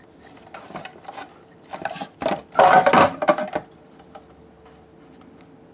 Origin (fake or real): real